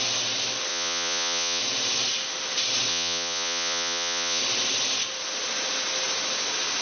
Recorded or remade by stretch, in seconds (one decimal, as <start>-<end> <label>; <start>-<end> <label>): 0.0-0.7 recorded; 0.7-1.6 remade; 1.6-2.9 recorded; 2.9-4.4 remade; 4.4-6.8 recorded